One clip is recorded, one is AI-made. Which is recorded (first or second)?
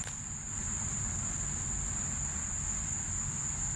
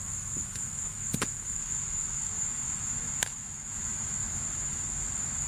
first